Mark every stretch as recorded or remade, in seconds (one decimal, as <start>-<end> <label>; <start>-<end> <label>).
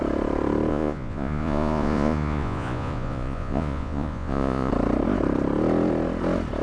0.0-0.7 recorded; 0.7-4.7 remade; 4.7-6.6 recorded